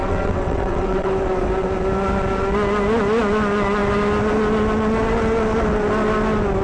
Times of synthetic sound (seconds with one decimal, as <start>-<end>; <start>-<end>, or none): 0.0-1.1